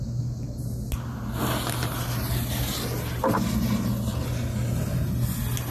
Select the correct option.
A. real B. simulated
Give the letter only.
A